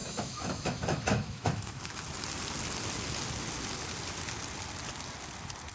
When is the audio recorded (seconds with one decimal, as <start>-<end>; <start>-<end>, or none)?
2.0-5.7